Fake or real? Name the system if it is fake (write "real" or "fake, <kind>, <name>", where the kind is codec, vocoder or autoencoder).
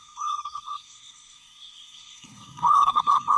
fake, codec, SNAC